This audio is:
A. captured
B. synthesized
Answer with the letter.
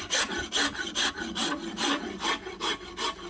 A